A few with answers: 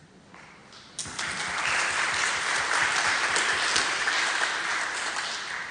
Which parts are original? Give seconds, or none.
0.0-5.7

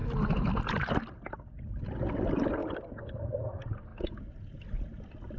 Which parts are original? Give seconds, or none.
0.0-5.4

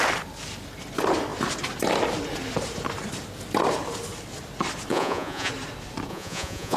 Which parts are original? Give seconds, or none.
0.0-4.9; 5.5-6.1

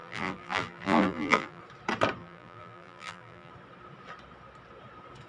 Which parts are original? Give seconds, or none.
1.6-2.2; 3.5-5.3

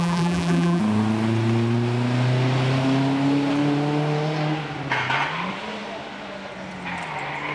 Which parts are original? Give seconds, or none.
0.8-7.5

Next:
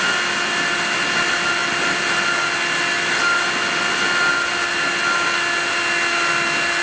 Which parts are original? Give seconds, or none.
0.0-6.8